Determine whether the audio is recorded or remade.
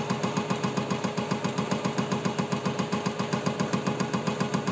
recorded